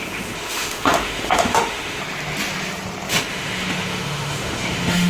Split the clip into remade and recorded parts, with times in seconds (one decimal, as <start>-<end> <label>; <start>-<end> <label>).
0.0-2.0 remade; 2.0-3.1 recorded; 3.1-5.1 remade